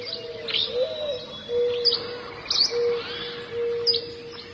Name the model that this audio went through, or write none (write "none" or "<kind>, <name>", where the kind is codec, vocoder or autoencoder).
none